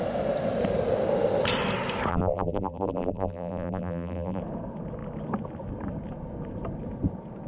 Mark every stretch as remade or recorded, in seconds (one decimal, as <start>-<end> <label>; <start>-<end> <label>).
0.0-2.1 recorded; 2.1-4.4 remade; 4.4-7.5 recorded